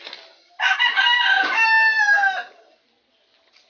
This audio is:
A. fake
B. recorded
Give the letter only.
B